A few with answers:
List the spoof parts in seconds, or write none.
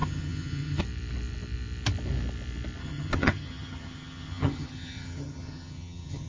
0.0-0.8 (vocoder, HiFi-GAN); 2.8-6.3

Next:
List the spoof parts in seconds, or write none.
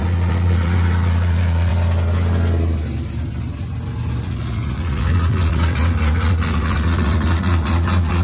0.0-1.7 (vocoder, Vocos); 4.2-8.2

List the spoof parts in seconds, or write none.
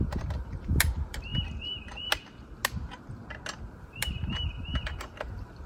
0.0-1.3 (vocoder, BigVGAN v2); 3.7-5.7